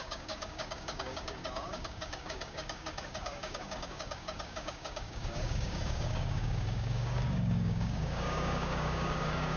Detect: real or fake fake